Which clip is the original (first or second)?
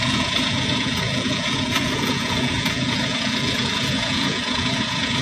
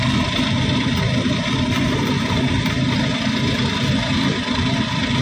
second